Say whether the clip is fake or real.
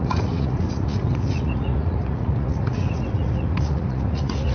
fake